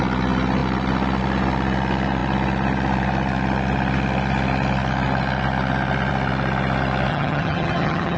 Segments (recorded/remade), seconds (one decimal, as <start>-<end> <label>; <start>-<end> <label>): 0.0-7.1 recorded; 7.1-8.2 remade